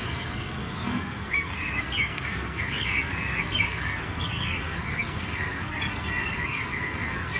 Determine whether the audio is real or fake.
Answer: fake